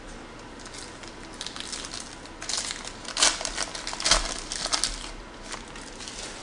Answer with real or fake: real